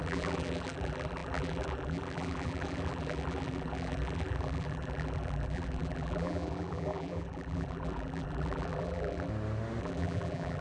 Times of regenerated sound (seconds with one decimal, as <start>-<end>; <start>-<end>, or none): 0.0-9.3; 9.8-10.6